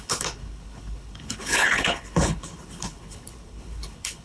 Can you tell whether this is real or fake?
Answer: fake